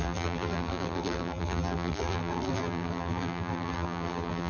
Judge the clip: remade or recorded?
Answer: remade